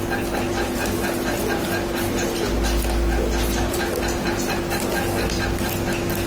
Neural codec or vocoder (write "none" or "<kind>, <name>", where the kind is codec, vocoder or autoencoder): none